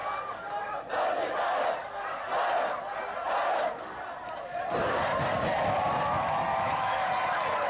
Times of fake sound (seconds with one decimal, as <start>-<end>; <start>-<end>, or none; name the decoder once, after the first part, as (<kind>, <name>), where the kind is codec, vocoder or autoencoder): 6.5-7.1 (autoencoder, DAC-VAE)